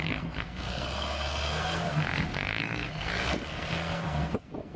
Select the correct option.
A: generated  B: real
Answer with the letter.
A